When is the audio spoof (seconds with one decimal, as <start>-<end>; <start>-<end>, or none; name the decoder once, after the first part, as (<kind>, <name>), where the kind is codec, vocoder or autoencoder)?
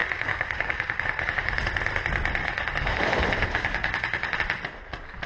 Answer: 0.0-1.6 (codec, DAC); 2.4-3.0; 3.5-4.4